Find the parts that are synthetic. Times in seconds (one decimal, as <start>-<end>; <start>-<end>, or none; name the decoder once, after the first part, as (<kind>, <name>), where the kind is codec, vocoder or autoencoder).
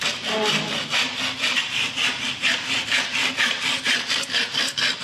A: 1.4-2.2 (vocoder, BigVGAN v2); 3.2-4.1